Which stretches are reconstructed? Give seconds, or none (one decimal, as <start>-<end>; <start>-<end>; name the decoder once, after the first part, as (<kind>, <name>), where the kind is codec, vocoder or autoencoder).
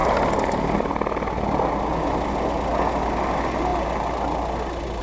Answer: none